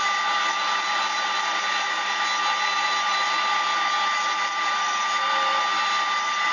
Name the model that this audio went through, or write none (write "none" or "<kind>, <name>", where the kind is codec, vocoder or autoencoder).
none